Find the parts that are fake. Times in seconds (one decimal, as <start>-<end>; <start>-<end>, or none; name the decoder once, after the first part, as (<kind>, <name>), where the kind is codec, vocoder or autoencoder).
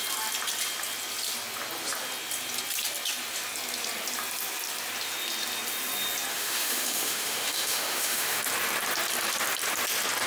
6.3-8.4 (autoencoder, DAC-VAE)